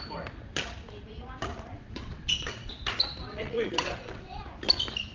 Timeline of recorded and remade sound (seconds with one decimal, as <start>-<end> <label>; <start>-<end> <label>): 0.0-1.7 recorded; 1.7-2.7 remade; 2.7-3.2 recorded; 3.2-4.4 remade; 4.4-5.1 recorded

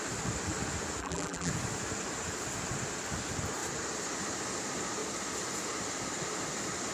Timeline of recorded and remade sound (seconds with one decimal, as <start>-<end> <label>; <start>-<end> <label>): 0.0-1.0 recorded; 1.0-1.5 remade; 1.5-6.9 recorded

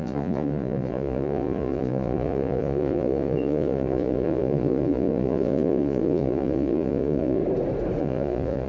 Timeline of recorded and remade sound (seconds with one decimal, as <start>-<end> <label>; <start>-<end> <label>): 0.0-7.4 remade; 7.4-8.0 recorded; 8.0-8.7 remade

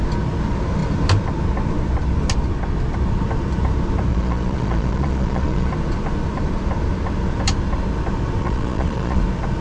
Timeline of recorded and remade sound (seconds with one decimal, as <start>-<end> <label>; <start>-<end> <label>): 0.0-4.1 recorded; 4.1-5.7 remade; 5.7-8.4 recorded; 8.4-9.2 remade; 9.2-9.6 recorded

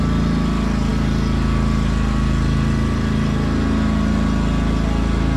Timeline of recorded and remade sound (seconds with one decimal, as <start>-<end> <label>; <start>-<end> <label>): 0.0-5.4 recorded

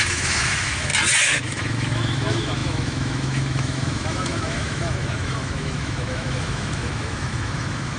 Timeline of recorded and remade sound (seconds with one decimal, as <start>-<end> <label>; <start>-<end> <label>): 0.0-0.9 remade; 0.9-1.4 recorded; 1.4-8.0 remade

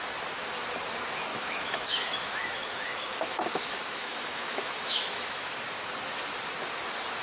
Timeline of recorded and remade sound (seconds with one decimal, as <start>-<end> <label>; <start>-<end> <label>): 0.0-1.3 recorded; 1.3-5.6 remade; 5.6-7.2 recorded

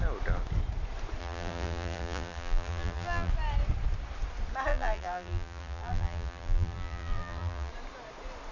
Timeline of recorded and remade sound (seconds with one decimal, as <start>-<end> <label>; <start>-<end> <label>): 0.0-1.2 recorded; 1.2-3.3 remade; 3.3-4.7 recorded; 4.7-7.7 remade; 7.7-8.5 recorded